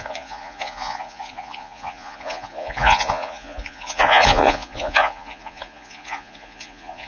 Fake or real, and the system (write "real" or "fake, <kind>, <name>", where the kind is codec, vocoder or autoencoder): fake, vocoder, Vocos